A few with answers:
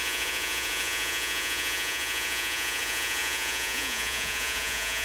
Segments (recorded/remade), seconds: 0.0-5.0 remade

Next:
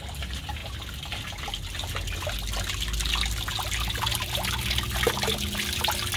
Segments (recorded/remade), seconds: 0.0-6.2 recorded

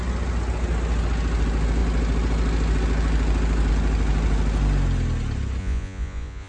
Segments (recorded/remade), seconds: 0.0-5.6 recorded; 5.6-6.5 remade

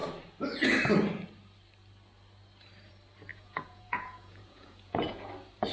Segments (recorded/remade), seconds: 0.0-3.3 recorded; 3.3-5.3 remade; 5.3-5.7 recorded

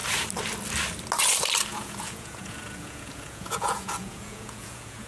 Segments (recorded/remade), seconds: 0.0-1.7 recorded; 1.7-5.1 remade

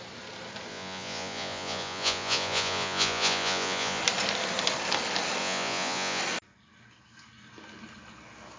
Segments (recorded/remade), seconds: 0.0-0.7 recorded; 0.7-4.0 remade; 4.0-5.4 recorded; 5.4-6.2 remade; 6.2-8.6 recorded

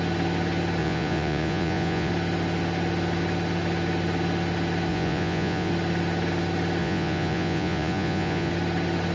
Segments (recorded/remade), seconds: 0.0-0.8 recorded; 0.8-2.1 remade; 2.1-4.9 recorded; 4.9-5.7 remade; 5.7-6.8 recorded; 6.8-8.5 remade; 8.5-9.1 recorded

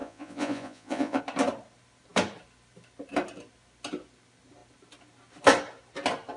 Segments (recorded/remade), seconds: 0.0-1.2 remade; 1.2-6.4 recorded